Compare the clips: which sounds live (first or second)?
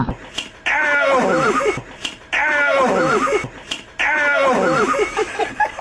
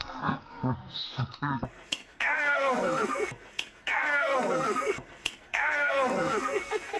first